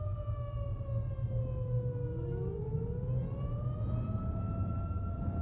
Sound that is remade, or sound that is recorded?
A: recorded